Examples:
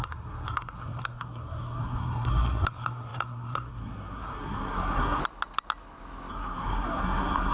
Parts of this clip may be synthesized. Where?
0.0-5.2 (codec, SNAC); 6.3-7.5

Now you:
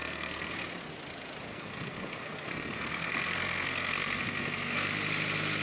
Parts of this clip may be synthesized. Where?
0.0-0.5 (codec, SNAC); 1.5-4.9